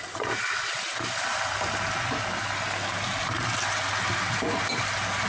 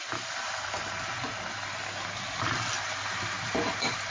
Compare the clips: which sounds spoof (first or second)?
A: second